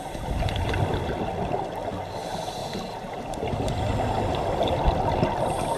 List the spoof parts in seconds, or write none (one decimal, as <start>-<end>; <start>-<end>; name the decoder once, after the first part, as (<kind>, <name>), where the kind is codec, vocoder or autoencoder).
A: none